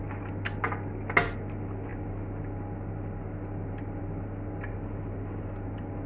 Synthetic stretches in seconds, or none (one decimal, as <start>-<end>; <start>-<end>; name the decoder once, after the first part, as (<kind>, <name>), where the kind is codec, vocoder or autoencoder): none